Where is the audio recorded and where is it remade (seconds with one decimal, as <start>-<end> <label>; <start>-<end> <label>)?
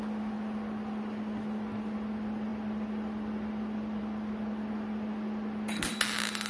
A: 0.0-6.5 recorded